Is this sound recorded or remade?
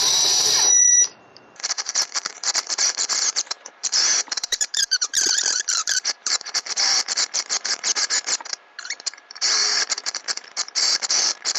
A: remade